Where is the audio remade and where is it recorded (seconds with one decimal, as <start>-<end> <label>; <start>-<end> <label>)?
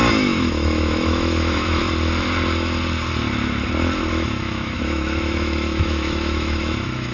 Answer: 0.0-1.8 remade; 1.8-4.1 recorded; 4.1-7.1 remade